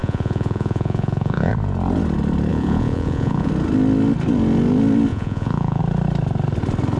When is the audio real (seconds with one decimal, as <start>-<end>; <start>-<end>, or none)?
1.5-2.5; 3.5-5.1; 5.8-7.0